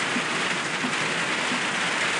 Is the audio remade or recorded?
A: recorded